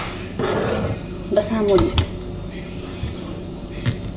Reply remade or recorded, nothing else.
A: recorded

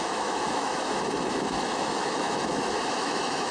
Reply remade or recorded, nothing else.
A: remade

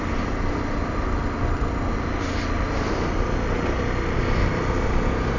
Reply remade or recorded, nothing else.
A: recorded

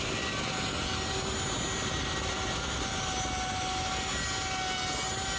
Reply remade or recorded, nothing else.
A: recorded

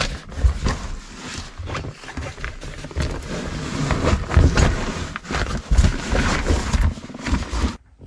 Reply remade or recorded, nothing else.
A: recorded